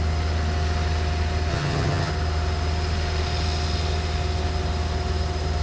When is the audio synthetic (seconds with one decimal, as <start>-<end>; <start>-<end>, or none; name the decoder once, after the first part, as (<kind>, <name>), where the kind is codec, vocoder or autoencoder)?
1.5-2.1 (vocoder, HiFi-GAN)